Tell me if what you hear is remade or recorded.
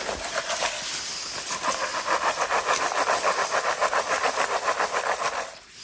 recorded